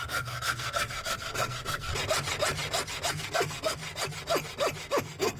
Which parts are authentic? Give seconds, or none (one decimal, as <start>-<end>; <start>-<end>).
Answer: 1.9-3.1; 3.8-5.0